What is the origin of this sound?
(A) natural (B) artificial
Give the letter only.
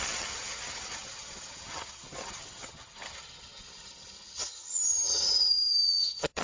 B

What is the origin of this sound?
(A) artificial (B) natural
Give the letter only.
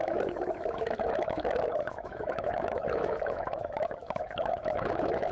A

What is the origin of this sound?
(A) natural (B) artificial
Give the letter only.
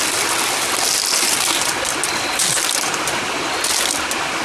A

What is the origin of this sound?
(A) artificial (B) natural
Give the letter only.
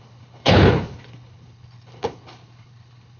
A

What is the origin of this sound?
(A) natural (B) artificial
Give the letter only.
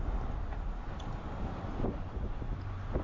A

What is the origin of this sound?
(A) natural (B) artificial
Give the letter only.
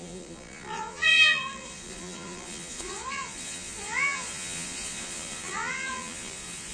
B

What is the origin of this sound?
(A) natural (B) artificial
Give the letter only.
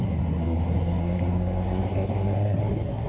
B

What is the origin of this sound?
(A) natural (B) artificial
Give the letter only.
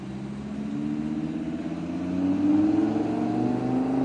A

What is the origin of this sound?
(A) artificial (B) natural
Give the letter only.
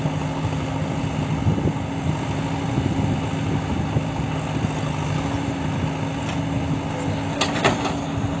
B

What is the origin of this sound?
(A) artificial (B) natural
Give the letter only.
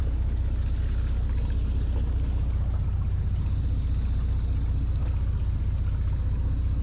B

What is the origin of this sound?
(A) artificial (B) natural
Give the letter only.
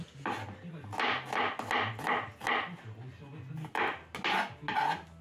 B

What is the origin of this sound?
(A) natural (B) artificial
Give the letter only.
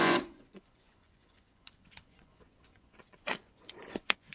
B